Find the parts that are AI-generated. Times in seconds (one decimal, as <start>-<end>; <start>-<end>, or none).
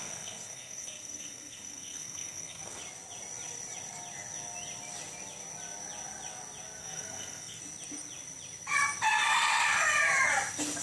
0.0-2.8; 6.8-7.6